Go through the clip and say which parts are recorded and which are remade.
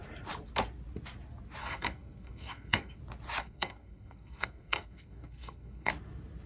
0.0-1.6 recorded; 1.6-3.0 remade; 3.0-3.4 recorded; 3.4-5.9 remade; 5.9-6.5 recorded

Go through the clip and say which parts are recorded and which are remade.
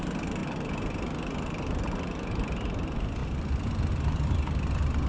0.0-5.1 remade